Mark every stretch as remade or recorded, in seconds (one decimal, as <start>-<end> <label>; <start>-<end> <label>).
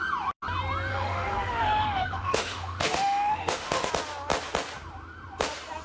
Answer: 0.0-0.9 recorded; 0.9-3.9 remade; 3.9-5.8 recorded